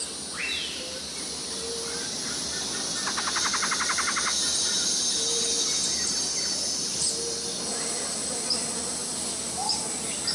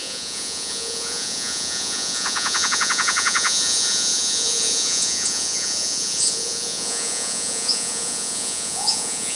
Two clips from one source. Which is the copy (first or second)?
second